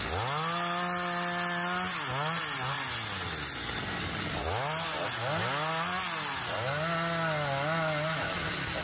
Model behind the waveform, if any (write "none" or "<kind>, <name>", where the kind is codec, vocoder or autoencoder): none